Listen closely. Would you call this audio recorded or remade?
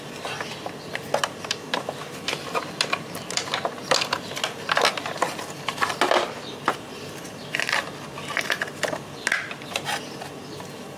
recorded